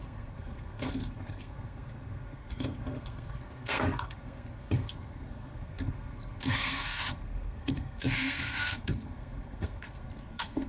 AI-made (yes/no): yes